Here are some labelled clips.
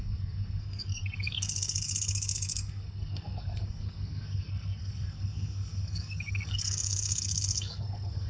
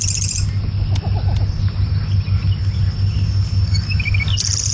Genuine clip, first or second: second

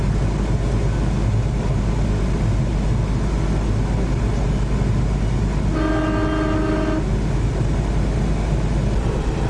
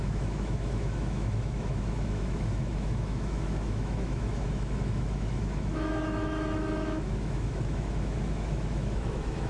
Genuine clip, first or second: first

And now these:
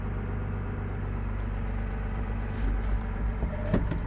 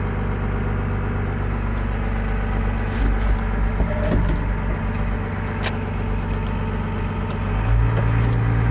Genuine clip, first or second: second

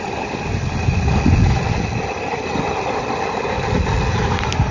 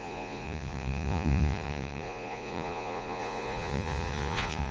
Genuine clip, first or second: first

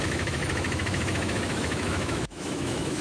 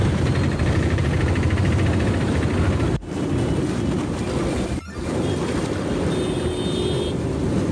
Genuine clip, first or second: second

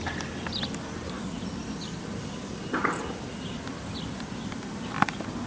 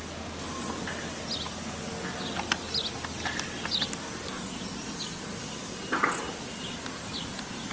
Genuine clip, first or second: second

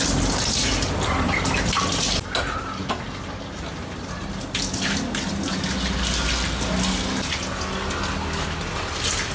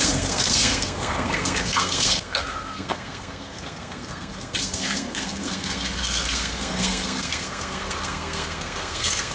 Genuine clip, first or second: first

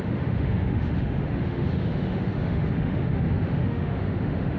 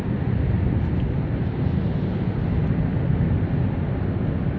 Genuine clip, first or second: second